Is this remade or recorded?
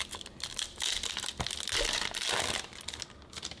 recorded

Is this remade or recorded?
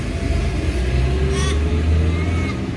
recorded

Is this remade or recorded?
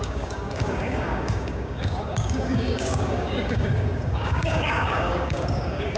remade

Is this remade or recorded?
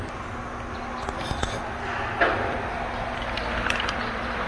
recorded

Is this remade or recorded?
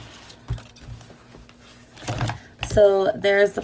recorded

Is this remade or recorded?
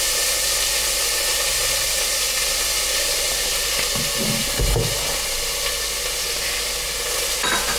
recorded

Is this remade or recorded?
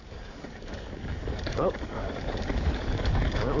remade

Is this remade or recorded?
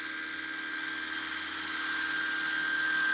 recorded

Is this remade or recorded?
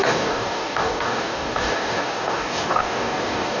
remade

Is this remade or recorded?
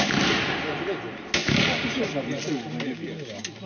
recorded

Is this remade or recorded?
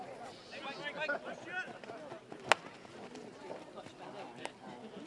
recorded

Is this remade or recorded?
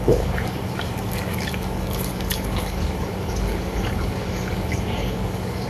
remade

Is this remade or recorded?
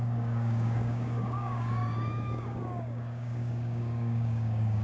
remade